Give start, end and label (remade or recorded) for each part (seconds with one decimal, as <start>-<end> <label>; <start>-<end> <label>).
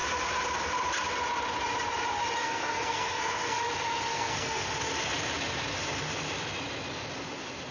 0.0-2.4 recorded; 2.4-3.6 remade; 3.6-4.1 recorded; 4.1-4.7 remade; 4.7-7.7 recorded